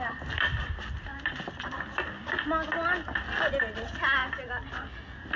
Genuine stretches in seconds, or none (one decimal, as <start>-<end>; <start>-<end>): 0.0-5.4